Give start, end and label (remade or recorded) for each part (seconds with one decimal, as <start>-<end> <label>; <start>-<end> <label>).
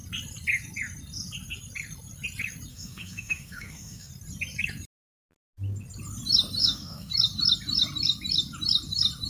0.0-2.7 recorded; 2.7-4.1 remade; 4.1-6.6 recorded; 6.6-7.1 remade; 7.1-9.3 recorded